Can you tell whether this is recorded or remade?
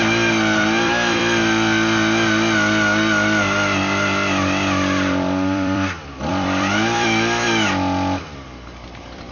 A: remade